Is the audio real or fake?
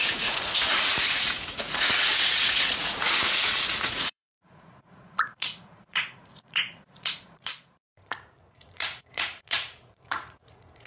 fake